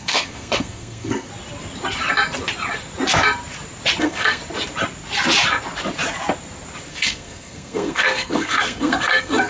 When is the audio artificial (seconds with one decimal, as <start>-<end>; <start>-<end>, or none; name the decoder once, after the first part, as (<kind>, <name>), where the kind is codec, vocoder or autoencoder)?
0.0-1.3 (codec, SNAC); 4.0-4.4; 6.9-9.5